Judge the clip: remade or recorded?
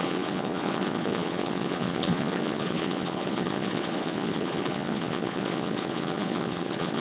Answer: remade